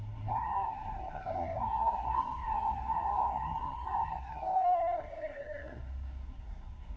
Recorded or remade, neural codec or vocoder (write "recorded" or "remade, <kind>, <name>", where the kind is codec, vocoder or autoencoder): remade, codec, SNAC